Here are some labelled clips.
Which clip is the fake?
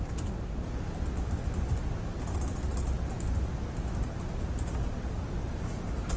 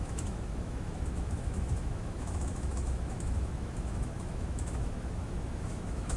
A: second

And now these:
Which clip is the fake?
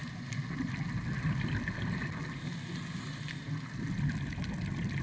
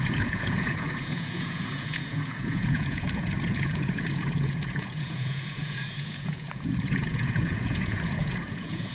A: second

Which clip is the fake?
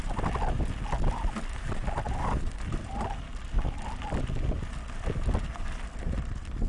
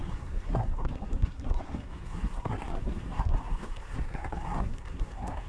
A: second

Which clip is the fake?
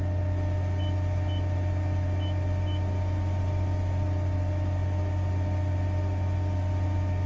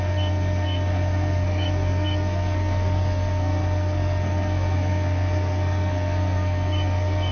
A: second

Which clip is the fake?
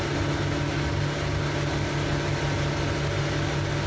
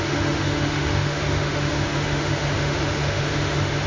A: second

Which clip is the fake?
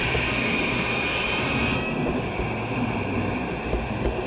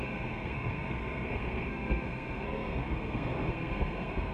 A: second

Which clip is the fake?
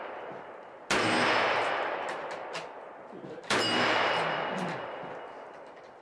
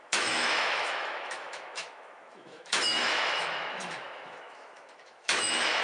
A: second